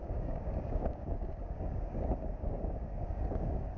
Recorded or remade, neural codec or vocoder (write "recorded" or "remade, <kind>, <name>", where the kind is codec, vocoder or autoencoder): remade, codec, DAC